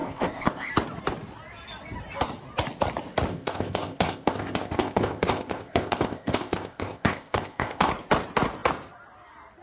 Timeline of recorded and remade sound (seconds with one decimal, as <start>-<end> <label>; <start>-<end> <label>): 0.0-0.7 remade; 0.7-3.3 recorded; 3.3-7.9 remade; 7.9-9.6 recorded